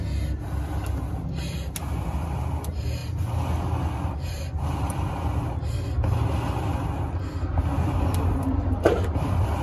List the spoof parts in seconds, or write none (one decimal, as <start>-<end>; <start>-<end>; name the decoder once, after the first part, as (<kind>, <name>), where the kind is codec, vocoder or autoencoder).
none